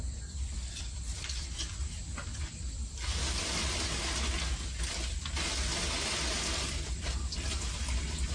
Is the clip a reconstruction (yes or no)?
no